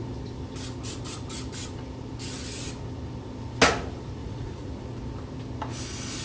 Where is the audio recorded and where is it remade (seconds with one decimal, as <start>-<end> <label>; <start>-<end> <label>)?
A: 0.0-4.2 recorded; 4.2-4.7 remade; 4.7-6.2 recorded